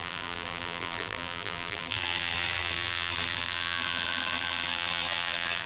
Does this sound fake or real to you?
fake